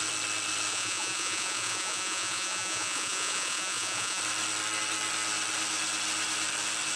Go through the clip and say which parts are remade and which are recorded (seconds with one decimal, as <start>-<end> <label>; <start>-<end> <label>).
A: 0.0-0.7 recorded; 0.7-4.2 remade; 4.2-7.0 recorded